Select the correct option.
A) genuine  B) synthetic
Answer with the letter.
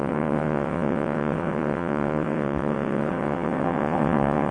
B